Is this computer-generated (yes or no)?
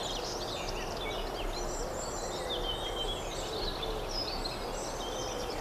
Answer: no